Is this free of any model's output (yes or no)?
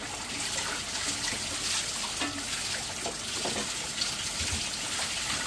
yes